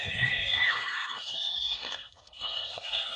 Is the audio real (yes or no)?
no